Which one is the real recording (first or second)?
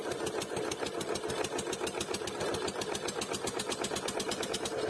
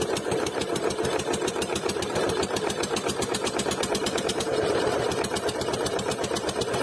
first